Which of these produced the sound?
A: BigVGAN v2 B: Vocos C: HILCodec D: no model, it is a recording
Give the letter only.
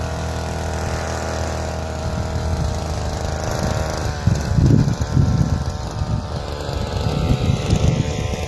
D